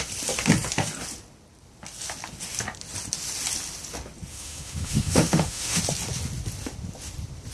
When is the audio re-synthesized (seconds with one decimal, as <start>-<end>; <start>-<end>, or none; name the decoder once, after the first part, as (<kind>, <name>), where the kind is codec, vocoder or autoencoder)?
4.3-5.8 (autoencoder, DAC-VAE)